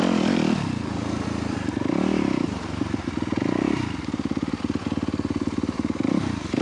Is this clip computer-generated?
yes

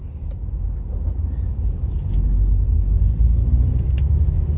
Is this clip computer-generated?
no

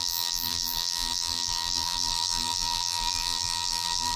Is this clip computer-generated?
yes